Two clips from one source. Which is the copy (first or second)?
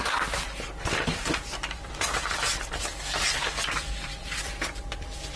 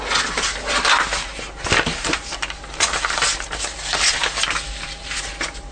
first